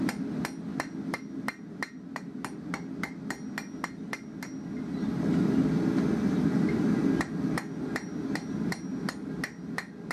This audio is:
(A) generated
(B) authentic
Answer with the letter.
B